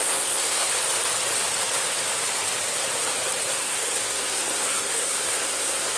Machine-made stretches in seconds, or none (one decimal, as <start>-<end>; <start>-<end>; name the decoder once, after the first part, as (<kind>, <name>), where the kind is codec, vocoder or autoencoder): 0.0-0.7 (codec, SNAC); 3.6-6.0